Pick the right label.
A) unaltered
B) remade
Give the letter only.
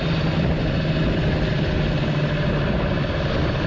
A